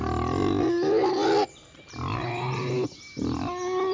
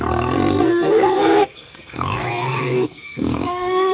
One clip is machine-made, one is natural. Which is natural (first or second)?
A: first